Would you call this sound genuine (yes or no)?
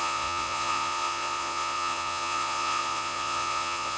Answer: no